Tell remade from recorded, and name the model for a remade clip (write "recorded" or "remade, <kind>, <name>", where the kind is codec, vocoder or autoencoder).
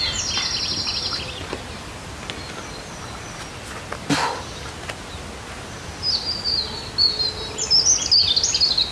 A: recorded